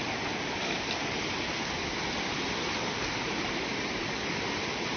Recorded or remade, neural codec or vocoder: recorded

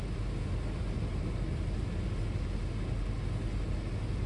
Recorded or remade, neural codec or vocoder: recorded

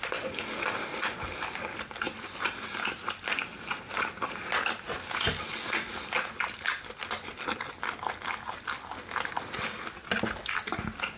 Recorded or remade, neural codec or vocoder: recorded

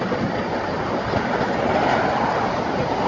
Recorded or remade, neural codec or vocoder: recorded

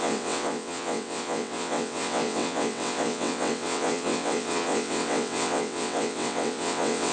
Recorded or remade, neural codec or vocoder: remade, vocoder, WaveNeXt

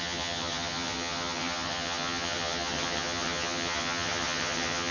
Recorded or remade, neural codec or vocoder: remade, vocoder, HiFi-GAN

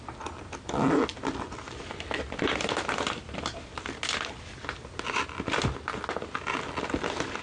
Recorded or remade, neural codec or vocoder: recorded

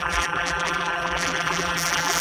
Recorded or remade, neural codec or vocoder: remade, vocoder, BigVGAN v2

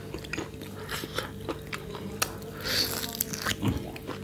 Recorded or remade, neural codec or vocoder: recorded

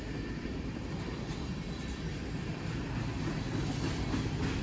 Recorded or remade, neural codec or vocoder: recorded